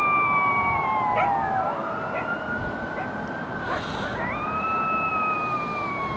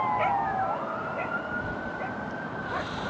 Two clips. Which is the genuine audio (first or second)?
first